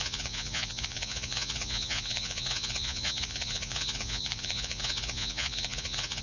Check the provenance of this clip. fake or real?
fake